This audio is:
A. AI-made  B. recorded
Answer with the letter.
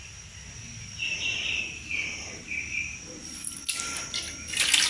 B